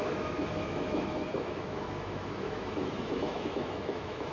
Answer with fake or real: fake